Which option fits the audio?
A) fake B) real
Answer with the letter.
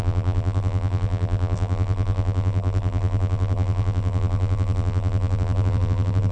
A